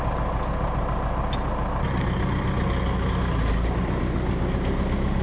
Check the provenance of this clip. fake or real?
real